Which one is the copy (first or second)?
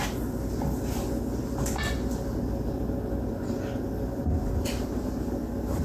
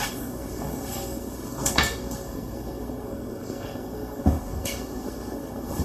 second